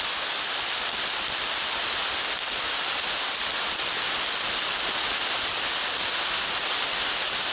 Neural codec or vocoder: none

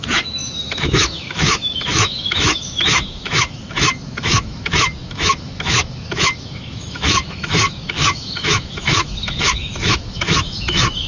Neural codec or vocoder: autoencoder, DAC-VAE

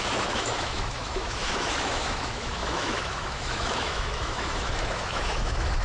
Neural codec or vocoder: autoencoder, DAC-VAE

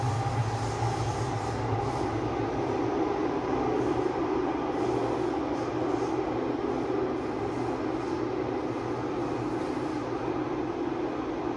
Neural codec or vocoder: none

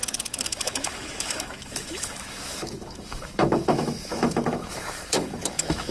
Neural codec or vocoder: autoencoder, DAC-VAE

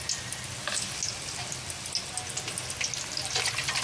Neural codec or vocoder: none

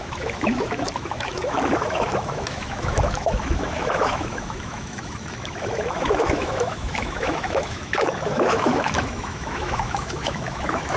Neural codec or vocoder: autoencoder, DAC-VAE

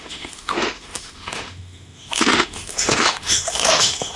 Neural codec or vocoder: autoencoder, DAC-VAE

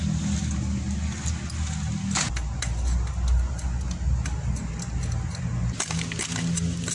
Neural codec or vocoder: none